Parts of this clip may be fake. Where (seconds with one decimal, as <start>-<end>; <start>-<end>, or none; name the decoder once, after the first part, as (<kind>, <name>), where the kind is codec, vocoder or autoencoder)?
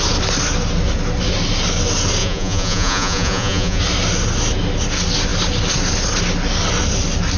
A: 2.2-3.8 (vocoder, Vocos)